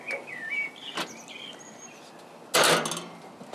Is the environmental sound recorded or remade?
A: recorded